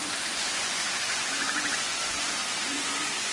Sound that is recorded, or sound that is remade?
remade